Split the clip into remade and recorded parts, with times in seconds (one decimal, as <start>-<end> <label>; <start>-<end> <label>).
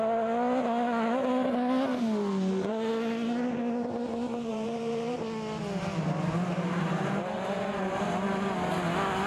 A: 0.0-4.5 recorded; 4.5-5.2 remade; 5.2-6.5 recorded; 6.5-8.7 remade; 8.7-9.3 recorded